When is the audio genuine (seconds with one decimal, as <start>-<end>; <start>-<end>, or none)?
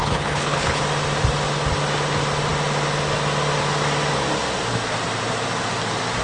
0.8-6.2